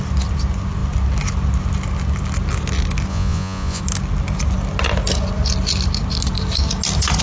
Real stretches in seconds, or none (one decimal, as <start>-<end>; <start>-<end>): 0.0-3.1; 3.8-7.2